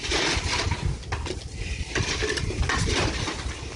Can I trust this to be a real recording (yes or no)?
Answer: yes